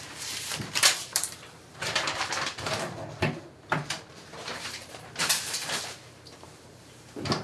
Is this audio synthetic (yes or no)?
yes